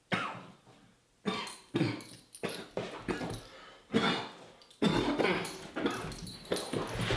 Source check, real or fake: real